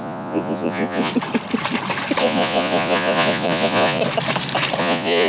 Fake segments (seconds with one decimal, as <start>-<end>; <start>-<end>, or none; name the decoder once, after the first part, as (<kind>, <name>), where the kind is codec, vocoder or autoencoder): 0.0-1.1 (vocoder, Vocos); 2.2-4.0; 4.8-5.3